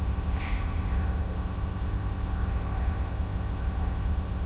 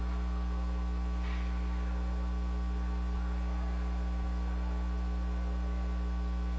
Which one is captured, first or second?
second